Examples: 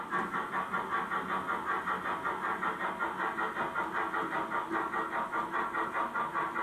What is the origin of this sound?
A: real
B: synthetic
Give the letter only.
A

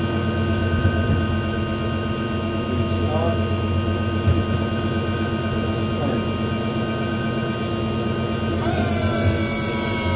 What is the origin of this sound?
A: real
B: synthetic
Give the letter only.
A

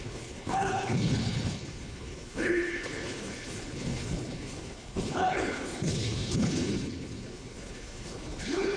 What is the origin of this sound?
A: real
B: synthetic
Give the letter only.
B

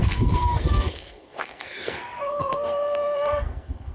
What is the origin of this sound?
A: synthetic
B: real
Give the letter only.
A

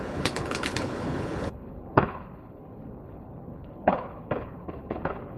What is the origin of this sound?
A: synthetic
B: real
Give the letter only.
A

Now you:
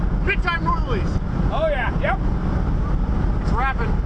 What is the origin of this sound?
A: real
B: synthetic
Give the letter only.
A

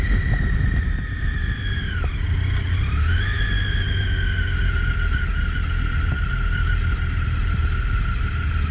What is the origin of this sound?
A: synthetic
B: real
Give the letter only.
B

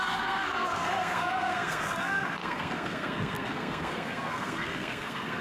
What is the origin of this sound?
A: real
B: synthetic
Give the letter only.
B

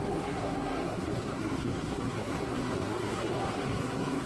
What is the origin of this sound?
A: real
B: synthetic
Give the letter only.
B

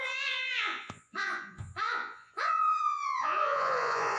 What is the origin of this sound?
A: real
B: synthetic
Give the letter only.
B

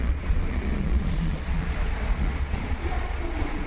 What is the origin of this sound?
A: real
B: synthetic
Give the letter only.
B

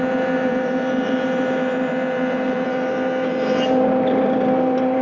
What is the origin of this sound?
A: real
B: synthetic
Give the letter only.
B